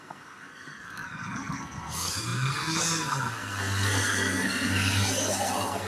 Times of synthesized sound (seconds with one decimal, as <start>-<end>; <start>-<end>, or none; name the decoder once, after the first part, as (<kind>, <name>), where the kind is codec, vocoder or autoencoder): 0.0-5.9 (codec, SNAC)